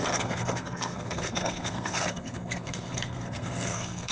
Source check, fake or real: fake